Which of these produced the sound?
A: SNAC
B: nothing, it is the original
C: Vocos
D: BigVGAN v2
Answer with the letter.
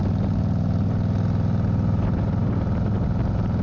B